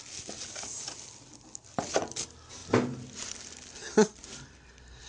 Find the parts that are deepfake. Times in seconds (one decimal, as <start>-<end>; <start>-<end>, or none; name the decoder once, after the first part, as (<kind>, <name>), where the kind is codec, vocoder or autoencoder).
2.6-3.4 (vocoder, BigVGAN v2); 4.2-5.1